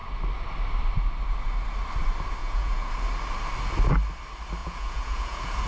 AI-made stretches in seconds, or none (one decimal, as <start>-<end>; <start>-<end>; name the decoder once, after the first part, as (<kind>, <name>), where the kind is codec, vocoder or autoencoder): 2.4-2.9 (vocoder, Vocos); 4.6-5.7